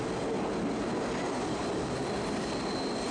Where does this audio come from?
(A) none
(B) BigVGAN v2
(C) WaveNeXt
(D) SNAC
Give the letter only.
A